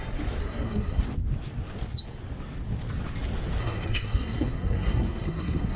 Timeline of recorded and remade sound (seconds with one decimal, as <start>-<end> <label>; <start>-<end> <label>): 0.0-0.4 recorded; 0.4-1.0 remade; 1.0-3.6 recorded; 3.6-5.8 remade